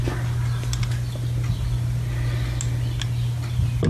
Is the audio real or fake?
real